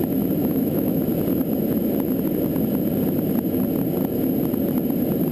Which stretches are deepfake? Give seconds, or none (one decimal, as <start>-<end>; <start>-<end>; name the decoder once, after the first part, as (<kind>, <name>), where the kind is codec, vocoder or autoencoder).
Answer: 0.4-1.0 (autoencoder, DAC-VAE)